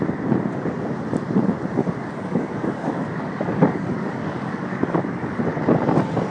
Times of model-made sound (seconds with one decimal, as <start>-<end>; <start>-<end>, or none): 1.8-5.3